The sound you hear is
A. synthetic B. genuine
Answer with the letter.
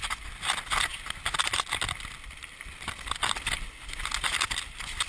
B